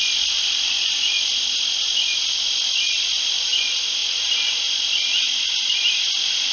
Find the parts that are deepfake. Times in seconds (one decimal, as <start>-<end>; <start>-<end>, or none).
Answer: none